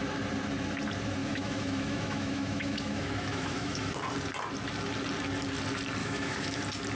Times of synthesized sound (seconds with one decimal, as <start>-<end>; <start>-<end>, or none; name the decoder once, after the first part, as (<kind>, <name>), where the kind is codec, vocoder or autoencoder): 1.2-3.9 (autoencoder, DAC-VAE); 6.0-6.6